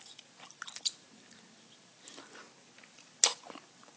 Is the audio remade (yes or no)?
no